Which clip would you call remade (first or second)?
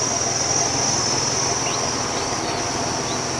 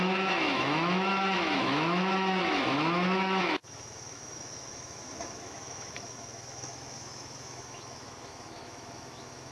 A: second